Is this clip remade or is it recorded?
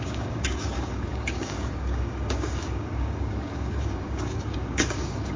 remade